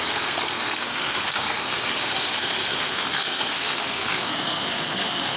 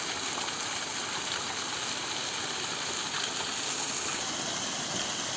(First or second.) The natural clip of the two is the second